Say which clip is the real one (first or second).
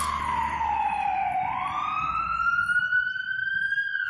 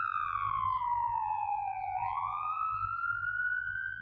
first